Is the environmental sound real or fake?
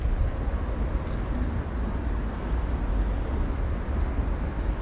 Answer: real